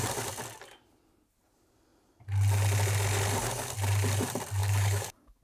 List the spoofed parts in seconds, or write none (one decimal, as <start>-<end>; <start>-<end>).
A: 4.6-5.4